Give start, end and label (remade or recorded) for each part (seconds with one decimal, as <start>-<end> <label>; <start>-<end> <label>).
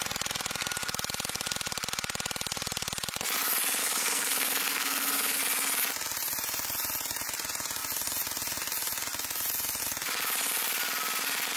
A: 0.0-3.8 recorded; 3.8-5.4 remade; 5.4-11.6 recorded